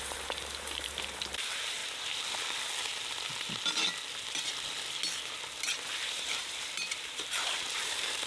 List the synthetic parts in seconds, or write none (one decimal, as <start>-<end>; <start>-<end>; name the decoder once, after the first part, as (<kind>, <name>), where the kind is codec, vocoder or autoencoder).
0.0-1.8 (vocoder, BigVGAN v2); 6.1-8.3